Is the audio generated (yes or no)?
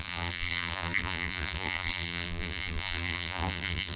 yes